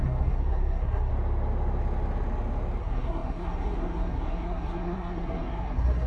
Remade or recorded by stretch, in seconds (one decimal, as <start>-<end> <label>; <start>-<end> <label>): 0.0-1.1 remade; 1.1-2.8 recorded; 2.8-6.1 remade